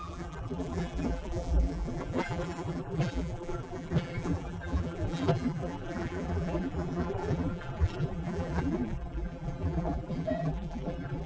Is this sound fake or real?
fake